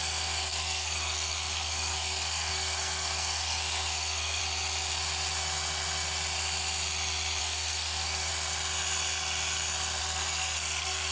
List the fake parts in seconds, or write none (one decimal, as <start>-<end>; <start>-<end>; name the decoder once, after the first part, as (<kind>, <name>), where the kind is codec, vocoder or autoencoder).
0.0-4.4 (codec, SNAC); 7.4-8.3; 10.0-11.1